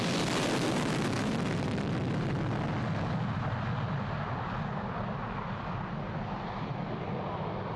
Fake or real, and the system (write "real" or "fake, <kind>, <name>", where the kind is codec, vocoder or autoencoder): real